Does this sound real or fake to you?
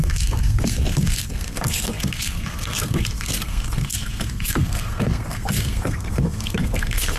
fake